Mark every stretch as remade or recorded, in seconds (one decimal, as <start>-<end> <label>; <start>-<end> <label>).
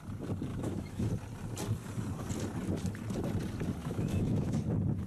0.0-0.5 recorded; 0.5-1.1 remade; 1.1-3.8 recorded; 3.8-4.6 remade; 4.6-5.1 recorded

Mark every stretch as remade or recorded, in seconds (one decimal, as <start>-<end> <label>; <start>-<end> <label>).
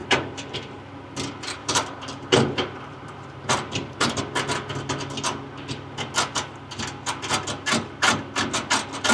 0.0-1.0 remade; 1.0-1.6 recorded; 1.6-4.2 remade; 4.2-9.1 recorded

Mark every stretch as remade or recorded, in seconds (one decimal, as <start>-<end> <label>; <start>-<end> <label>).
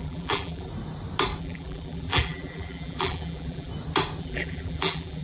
0.0-0.7 remade; 0.7-1.4 recorded; 1.4-3.7 remade; 3.7-4.2 recorded; 4.2-5.2 remade